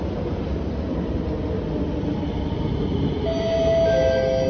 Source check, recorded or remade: recorded